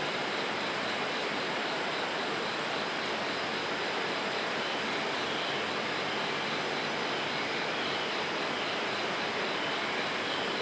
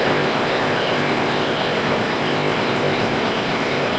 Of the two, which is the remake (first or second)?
second